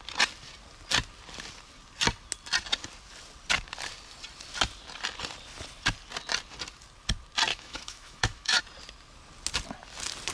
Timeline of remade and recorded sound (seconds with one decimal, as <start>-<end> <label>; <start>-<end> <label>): 0.0-7.5 recorded; 7.5-8.6 remade; 8.6-10.3 recorded